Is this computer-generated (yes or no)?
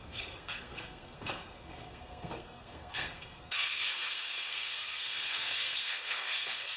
yes